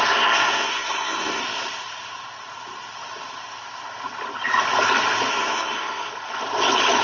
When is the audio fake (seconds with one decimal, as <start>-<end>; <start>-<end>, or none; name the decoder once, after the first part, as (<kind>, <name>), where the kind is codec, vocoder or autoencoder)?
0.0-1.4 (codec, SNAC); 5.3-6.1